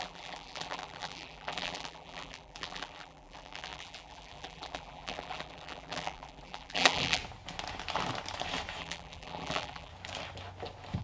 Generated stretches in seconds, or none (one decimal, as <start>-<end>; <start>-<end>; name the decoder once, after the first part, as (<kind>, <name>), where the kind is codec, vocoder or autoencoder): 0.0-7.2 (vocoder, BigVGAN v2); 8.8-9.9